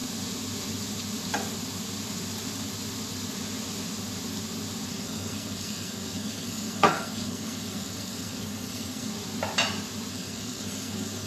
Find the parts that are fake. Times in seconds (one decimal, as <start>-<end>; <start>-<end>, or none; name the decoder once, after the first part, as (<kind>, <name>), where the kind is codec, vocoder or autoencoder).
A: 4.9-9.1 (codec, SNAC); 10.1-11.3